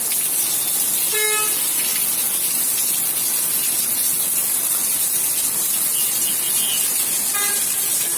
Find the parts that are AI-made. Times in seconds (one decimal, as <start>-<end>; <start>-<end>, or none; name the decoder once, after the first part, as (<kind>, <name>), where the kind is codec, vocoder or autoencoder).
none